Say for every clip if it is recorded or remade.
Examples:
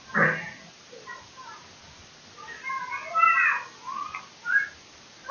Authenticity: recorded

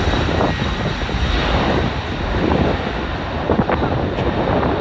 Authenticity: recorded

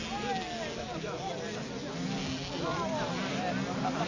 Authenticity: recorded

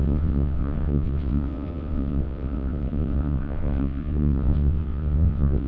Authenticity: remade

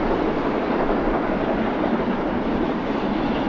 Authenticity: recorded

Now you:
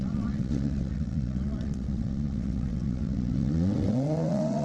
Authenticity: remade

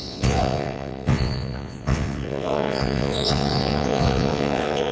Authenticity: remade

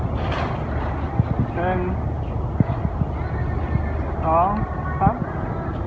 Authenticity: recorded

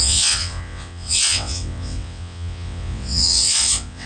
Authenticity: remade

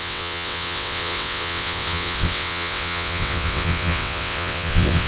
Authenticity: remade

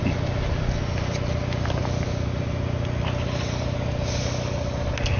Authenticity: recorded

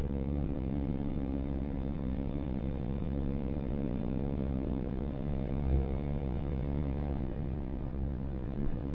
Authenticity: remade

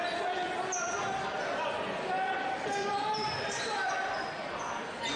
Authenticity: recorded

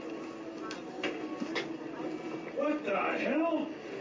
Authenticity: recorded